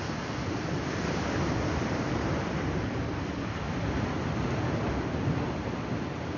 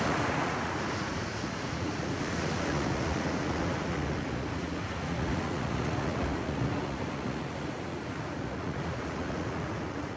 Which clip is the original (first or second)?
first